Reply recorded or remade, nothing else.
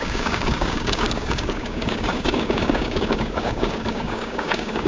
remade